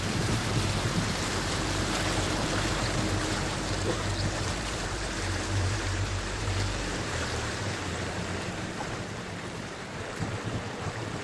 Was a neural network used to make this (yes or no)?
yes